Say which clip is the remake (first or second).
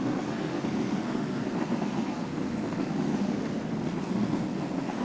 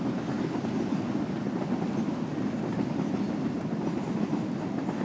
first